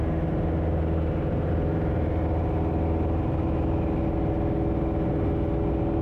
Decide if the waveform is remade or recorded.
recorded